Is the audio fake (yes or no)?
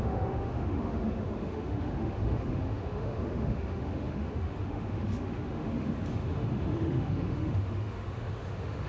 yes